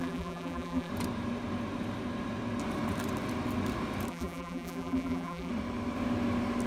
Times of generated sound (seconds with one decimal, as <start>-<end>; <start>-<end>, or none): 0.0-0.9; 4.1-5.5